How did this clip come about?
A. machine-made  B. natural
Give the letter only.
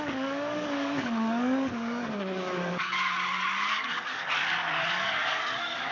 A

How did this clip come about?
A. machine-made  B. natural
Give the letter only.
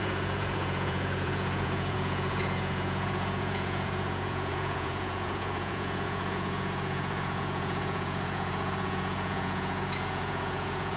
A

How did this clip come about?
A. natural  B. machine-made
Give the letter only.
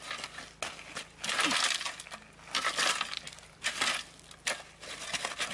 A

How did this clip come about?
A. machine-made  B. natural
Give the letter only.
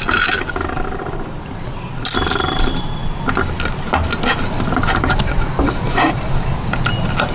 B